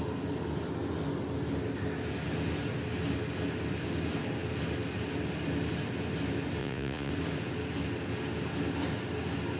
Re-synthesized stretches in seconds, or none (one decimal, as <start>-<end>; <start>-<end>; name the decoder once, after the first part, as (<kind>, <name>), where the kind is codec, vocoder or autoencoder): 6.6-7.1 (vocoder, Vocos)